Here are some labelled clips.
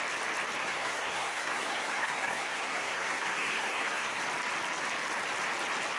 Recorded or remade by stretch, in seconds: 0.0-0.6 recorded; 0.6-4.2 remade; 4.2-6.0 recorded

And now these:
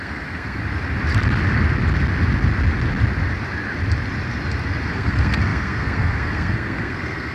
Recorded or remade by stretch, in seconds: 0.0-0.6 remade; 0.6-4.9 recorded; 4.9-7.3 remade

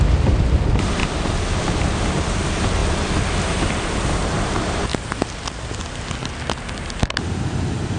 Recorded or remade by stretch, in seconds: 0.0-1.0 remade; 1.0-1.6 recorded; 1.6-2.8 remade; 2.8-4.0 recorded; 4.0-4.9 remade; 4.9-8.0 recorded

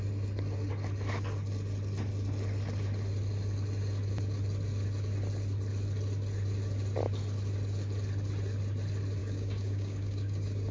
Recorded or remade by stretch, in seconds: 0.0-9.2 recorded; 9.2-10.7 remade

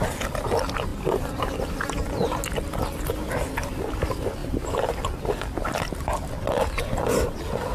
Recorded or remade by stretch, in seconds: 0.0-0.9 recorded; 0.9-1.6 remade; 1.6-7.7 recorded

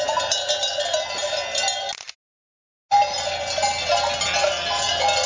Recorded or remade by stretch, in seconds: 0.0-5.3 recorded

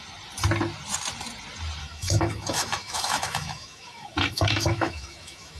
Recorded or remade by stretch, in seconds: 0.0-1.8 recorded; 1.8-5.6 remade

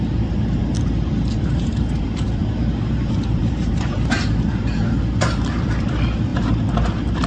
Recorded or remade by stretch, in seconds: 0.0-0.6 remade; 0.6-1.3 recorded; 1.3-7.3 remade